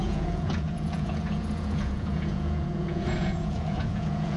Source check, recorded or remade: remade